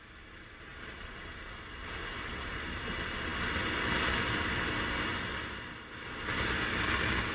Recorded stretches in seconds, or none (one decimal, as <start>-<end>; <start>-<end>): 0.0-7.3